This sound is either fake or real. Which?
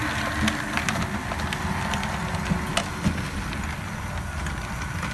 real